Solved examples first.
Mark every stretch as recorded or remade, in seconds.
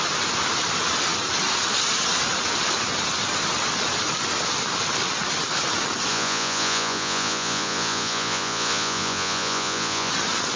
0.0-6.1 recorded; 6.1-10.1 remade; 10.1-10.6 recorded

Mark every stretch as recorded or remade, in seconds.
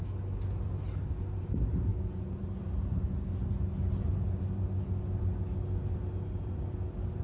0.0-1.9 recorded; 1.9-2.4 remade; 2.4-7.2 recorded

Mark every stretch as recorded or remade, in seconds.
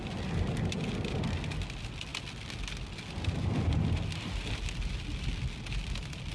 0.0-6.3 recorded